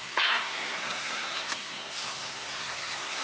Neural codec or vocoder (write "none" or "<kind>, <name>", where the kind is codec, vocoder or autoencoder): codec, SNAC